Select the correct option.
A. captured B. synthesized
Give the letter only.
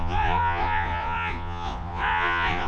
B